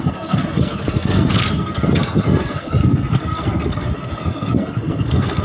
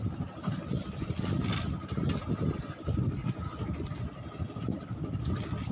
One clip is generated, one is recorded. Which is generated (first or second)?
first